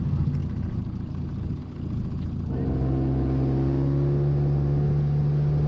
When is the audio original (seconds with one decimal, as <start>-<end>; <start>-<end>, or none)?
0.0-5.7